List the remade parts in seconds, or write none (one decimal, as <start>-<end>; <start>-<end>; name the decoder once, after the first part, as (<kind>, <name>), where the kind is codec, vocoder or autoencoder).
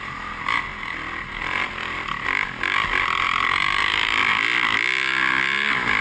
none